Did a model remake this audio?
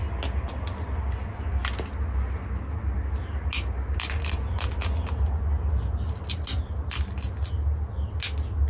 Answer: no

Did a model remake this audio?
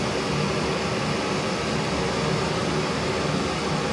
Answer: no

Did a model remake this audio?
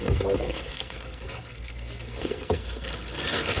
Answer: yes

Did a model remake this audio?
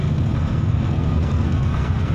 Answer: yes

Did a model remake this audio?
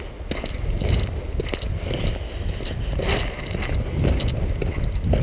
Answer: no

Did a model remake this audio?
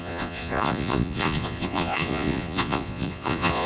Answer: yes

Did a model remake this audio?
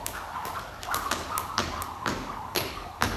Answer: yes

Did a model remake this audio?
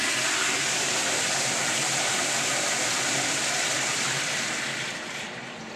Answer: yes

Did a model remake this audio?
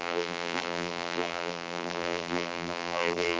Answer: yes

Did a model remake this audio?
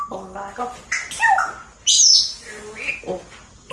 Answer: no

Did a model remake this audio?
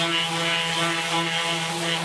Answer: no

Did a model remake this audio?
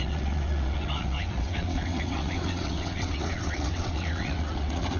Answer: yes